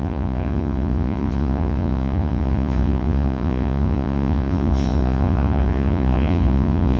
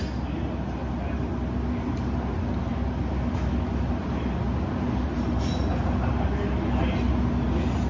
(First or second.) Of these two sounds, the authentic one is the second